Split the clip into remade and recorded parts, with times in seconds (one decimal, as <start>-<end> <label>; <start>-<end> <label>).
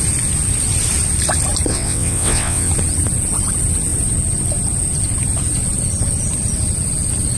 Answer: 0.0-1.7 recorded; 1.7-2.7 remade; 2.7-7.4 recorded